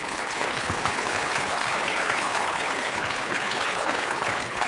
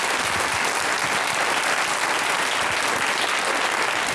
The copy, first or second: first